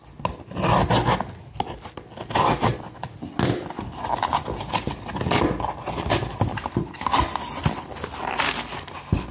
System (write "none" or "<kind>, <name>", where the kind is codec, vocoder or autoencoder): none